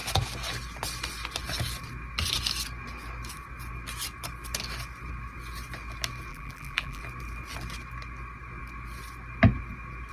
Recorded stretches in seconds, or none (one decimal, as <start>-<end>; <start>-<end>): 0.0-6.3; 7.0-10.1